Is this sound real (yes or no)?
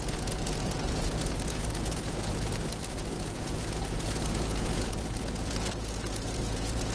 no